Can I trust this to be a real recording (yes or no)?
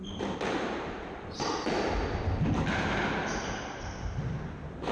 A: yes